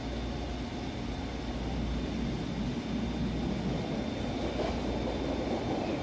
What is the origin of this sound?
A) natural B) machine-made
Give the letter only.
A